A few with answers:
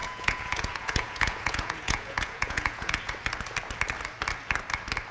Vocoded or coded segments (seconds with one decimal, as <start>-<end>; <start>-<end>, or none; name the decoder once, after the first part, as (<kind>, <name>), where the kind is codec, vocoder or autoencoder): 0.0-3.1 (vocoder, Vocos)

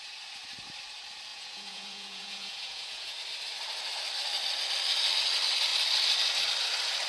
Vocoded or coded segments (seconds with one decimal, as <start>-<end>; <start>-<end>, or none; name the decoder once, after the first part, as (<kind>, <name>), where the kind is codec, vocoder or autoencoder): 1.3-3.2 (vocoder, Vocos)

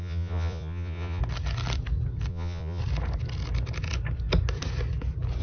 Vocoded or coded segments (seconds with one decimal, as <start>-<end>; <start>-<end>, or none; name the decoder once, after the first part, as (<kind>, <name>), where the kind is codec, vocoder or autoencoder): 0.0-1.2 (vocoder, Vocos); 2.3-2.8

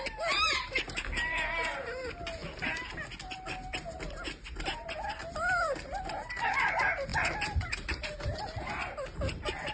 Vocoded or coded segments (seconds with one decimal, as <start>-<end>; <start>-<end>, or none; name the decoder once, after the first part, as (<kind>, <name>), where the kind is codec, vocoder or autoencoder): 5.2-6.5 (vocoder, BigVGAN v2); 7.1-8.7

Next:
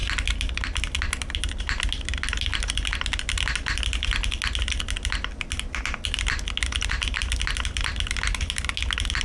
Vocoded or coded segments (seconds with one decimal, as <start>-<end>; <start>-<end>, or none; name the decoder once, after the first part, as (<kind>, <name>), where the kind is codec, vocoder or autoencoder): none

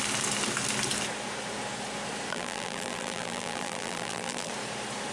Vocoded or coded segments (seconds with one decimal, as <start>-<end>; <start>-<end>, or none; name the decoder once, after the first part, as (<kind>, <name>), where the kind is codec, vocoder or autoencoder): 2.3-4.5 (vocoder, BigVGAN v2)